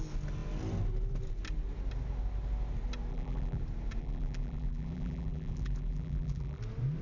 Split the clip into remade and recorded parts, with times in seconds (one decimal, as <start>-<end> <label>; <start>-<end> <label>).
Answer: 0.0-3.1 recorded; 3.1-3.6 remade; 3.6-4.0 recorded; 4.0-6.6 remade; 6.6-7.0 recorded